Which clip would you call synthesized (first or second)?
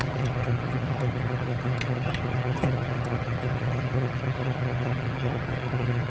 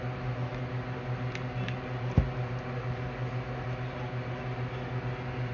first